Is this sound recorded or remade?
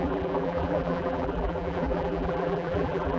remade